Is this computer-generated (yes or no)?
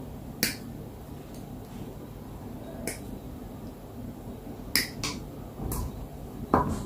no